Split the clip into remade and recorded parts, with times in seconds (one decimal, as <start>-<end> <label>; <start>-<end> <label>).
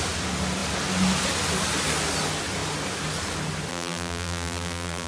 0.0-3.7 recorded; 3.7-5.1 remade